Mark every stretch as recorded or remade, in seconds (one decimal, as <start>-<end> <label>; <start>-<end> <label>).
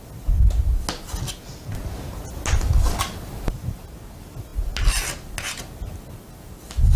0.0-7.0 recorded